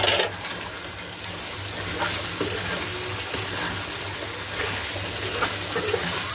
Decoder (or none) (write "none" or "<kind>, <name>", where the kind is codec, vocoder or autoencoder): none